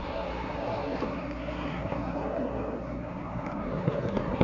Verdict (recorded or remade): remade